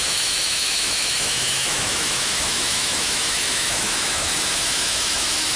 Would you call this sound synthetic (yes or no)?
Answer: yes